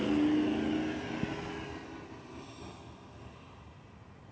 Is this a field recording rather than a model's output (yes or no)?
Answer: yes